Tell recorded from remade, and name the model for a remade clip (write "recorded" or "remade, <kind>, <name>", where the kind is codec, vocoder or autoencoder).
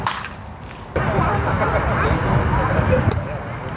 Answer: recorded